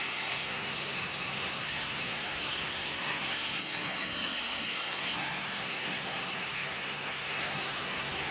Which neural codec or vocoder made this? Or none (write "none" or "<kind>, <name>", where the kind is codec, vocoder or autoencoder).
codec, SNAC